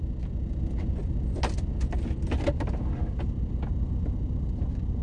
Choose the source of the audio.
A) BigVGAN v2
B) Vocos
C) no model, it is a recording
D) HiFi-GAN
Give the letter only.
C